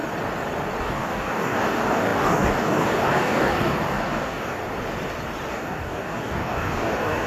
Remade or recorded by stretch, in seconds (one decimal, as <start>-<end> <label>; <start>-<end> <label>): 0.0-0.8 recorded; 0.8-4.6 remade; 4.6-5.5 recorded; 5.5-7.3 remade